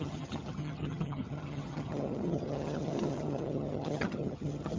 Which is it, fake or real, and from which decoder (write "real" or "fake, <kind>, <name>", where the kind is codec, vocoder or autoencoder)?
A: fake, vocoder, HiFi-GAN